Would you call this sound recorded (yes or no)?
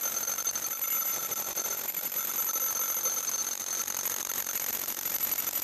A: yes